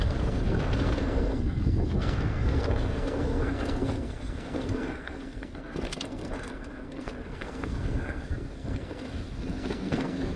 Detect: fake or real fake